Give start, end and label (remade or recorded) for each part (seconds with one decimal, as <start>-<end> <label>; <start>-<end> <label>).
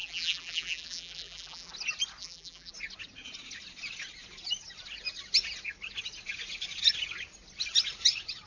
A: 0.0-1.7 remade; 1.7-2.2 recorded; 2.2-2.7 remade; 2.7-8.5 recorded